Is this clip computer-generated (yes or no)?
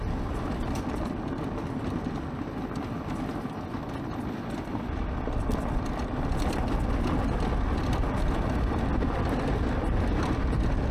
no